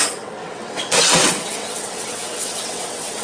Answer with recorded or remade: remade